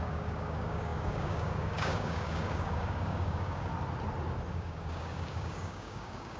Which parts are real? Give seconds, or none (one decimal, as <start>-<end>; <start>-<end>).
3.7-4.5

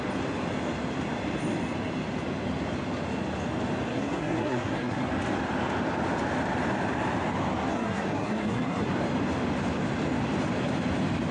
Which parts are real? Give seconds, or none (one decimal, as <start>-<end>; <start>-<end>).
0.0-3.9; 5.1-7.7; 8.9-11.3

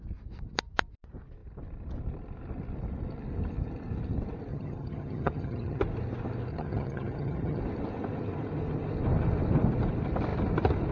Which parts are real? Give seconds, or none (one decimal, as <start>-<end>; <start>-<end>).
0.0-4.5; 5.8-6.5; 7.6-10.9

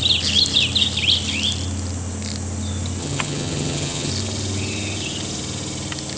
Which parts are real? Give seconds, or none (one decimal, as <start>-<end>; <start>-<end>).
0.0-3.0; 4.1-6.2